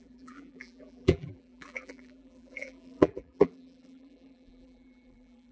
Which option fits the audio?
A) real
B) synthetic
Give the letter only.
B